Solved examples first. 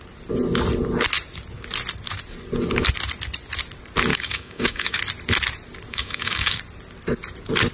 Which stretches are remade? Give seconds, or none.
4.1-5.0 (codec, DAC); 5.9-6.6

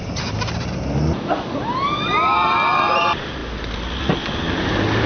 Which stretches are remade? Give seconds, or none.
none

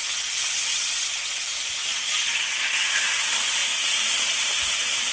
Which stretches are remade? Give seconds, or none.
none

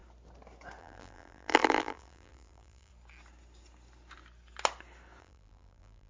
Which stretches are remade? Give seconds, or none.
0.8-2.9 (vocoder, BigVGAN v2); 5.2-6.1

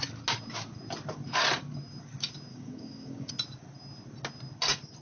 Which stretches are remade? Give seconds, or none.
2.5-3.3 (codec, DAC)

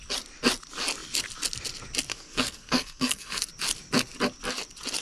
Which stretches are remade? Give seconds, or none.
2.1-3.5 (codec, SNAC)